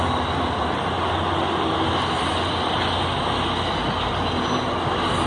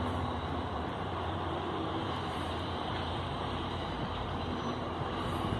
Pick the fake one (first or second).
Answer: second